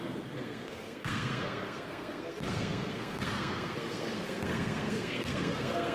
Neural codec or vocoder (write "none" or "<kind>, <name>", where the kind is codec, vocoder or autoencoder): codec, SNAC